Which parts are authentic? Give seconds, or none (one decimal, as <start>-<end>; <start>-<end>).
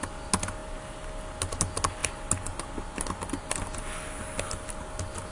0.0-5.3